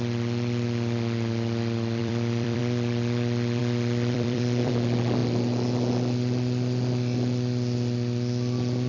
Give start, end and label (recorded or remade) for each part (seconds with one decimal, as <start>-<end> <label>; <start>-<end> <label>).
0.0-2.0 recorded; 2.0-2.6 remade; 2.6-3.6 recorded; 3.6-4.7 remade; 4.7-8.9 recorded